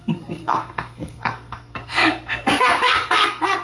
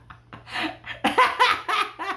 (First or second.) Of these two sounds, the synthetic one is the first